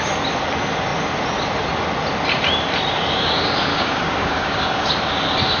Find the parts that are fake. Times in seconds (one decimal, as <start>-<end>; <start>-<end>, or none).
3.7-4.9